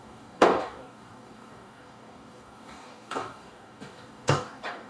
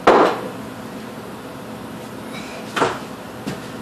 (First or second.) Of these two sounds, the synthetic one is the first